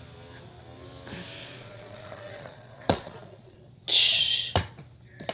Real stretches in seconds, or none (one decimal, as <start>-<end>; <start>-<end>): 0.0-1.4; 3.6-5.3